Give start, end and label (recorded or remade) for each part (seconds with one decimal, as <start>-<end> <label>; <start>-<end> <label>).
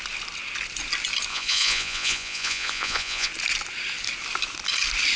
0.0-1.3 recorded; 1.3-3.3 remade; 3.3-5.2 recorded